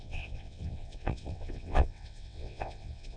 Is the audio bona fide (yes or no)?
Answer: no